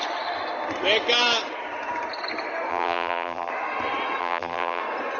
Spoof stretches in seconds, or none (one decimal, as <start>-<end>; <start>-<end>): 2.7-3.5; 4.2-4.8